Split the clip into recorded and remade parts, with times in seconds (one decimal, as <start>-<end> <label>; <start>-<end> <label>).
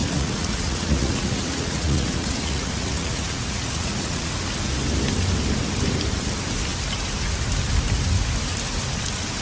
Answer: 0.0-4.3 remade; 4.3-9.4 recorded